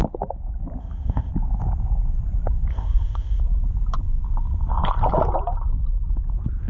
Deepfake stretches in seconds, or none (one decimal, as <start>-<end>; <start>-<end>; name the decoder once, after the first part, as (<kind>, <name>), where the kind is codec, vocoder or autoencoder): 0.8-1.3 (codec, ZipCodec); 2.7-3.4